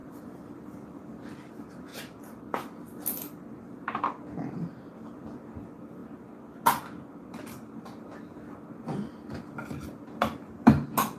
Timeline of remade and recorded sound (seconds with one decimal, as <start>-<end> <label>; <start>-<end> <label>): 0.0-1.0 remade; 1.0-11.2 recorded